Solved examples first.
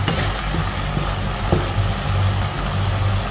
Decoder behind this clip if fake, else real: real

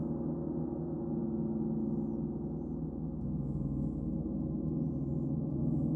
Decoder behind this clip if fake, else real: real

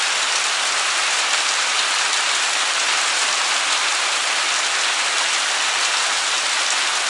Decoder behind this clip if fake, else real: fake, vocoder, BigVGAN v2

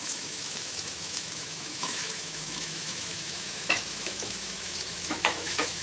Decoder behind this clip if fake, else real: fake, autoencoder, DAC-VAE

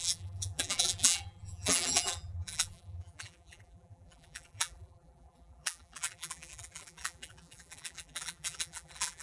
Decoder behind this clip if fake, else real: fake, vocoder, BigVGAN v2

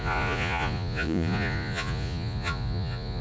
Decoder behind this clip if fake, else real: fake, vocoder, Vocos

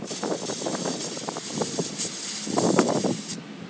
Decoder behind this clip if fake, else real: real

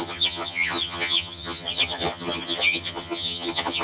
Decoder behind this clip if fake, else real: fake, vocoder, HiFi-GAN